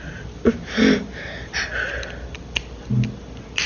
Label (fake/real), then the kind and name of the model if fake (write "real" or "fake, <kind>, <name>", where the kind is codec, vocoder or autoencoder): real